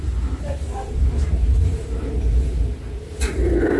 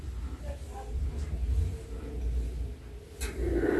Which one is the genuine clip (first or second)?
second